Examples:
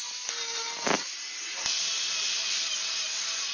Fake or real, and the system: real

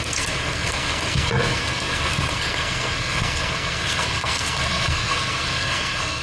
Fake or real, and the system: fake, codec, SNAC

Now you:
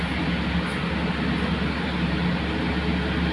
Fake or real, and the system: real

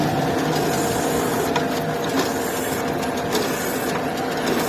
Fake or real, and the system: real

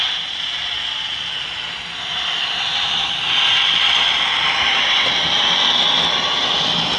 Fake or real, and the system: real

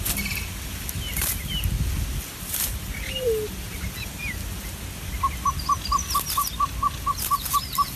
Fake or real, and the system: real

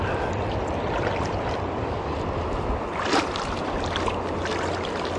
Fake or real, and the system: real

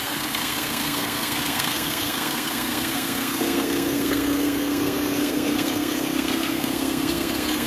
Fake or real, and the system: fake, codec, SNAC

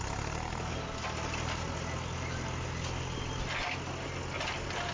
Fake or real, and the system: real